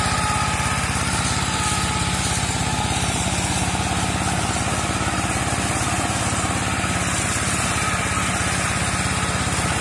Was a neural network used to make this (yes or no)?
no